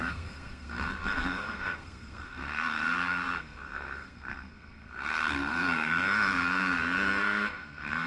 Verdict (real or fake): fake